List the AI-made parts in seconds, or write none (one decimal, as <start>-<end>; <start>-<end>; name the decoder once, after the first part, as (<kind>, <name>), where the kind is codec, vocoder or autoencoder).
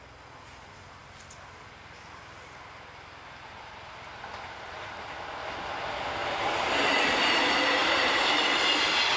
6.2-6.7 (vocoder, BigVGAN v2); 7.8-8.4